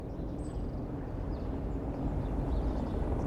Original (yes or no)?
yes